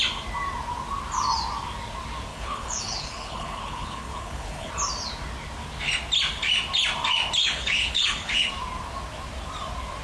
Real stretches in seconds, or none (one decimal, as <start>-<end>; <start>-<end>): 0.0-2.3; 4.7-7.4; 8.5-10.0